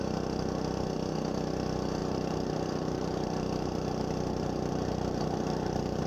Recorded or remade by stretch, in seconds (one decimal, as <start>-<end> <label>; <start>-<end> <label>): 0.0-2.0 recorded; 2.0-6.1 remade